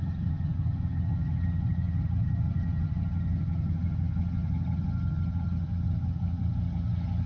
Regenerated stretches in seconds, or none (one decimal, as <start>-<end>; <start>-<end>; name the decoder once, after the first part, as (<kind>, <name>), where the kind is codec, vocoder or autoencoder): 0.0-7.3 (vocoder, HiFi-GAN)